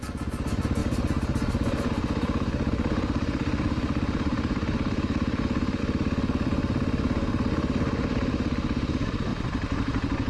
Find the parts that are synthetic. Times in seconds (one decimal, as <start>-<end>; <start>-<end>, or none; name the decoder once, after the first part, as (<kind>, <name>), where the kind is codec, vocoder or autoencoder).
0.8-5.8 (vocoder, BigVGAN v2); 9.3-10.3